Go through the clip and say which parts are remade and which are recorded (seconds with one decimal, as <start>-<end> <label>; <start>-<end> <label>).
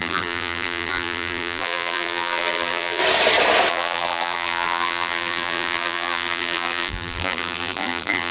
0.0-3.0 remade; 3.0-3.7 recorded; 3.7-8.3 remade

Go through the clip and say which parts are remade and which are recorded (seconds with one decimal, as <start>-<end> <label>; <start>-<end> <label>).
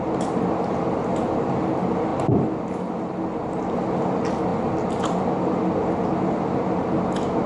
0.0-7.5 recorded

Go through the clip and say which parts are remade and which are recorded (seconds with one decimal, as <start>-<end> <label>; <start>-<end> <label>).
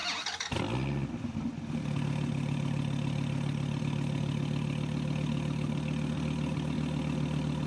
0.0-7.7 recorded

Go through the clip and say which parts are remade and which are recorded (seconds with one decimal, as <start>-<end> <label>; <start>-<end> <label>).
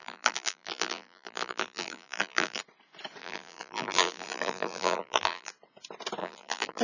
0.0-2.6 remade; 2.6-3.2 recorded; 3.2-5.5 remade; 5.5-6.2 recorded; 6.2-6.8 remade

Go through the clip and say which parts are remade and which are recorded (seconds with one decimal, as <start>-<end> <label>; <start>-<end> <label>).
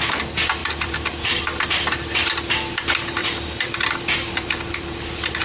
0.0-0.6 recorded; 0.6-2.5 remade; 2.5-3.2 recorded; 3.2-5.4 remade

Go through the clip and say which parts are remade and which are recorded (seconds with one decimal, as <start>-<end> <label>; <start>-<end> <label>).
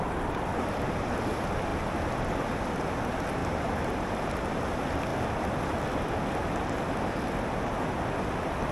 0.0-3.4 recorded; 3.4-4.5 remade; 4.5-8.7 recorded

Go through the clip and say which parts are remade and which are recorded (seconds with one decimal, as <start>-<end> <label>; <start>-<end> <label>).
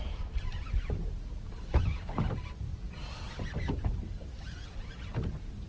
0.0-2.7 recorded; 2.7-4.9 remade; 4.9-5.7 recorded